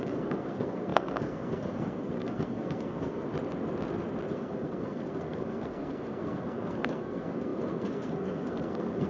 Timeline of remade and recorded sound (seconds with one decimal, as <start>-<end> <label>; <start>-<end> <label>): 0.0-3.3 remade; 3.3-4.3 recorded; 4.3-9.1 remade